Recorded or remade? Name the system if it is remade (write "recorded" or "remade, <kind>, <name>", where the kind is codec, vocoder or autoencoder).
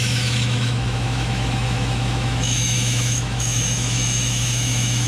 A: remade, autoencoder, DAC-VAE